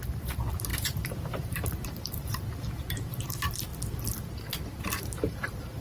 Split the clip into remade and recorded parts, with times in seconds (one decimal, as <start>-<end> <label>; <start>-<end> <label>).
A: 0.0-3.7 remade; 3.7-4.7 recorded; 4.7-5.8 remade